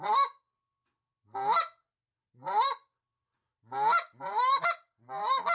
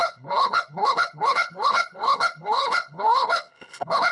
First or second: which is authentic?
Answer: first